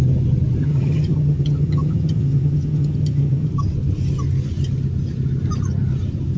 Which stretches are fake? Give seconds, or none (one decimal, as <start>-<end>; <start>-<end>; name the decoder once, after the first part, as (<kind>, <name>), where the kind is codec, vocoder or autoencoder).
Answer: 0.6-3.5 (vocoder, HiFi-GAN)